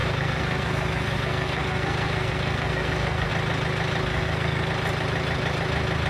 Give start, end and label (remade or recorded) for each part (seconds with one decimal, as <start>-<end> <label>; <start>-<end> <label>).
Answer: 0.0-3.3 remade; 3.3-4.1 recorded; 4.1-4.7 remade; 4.7-6.1 recorded